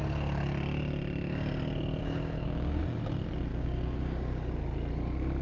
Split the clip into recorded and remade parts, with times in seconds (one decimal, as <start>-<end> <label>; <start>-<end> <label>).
0.0-2.0 recorded; 2.0-2.8 remade; 2.8-3.5 recorded; 3.5-4.5 remade; 4.5-5.4 recorded